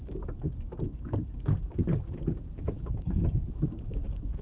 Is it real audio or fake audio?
fake